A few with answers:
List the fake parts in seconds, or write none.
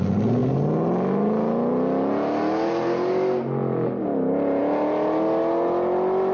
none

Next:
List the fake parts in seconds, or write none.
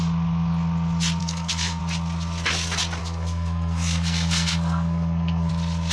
1.2-1.8 (codec, SNAC); 3.0-5.5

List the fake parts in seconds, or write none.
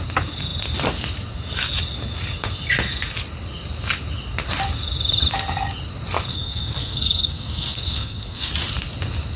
6.3-8.5 (codec, SNAC)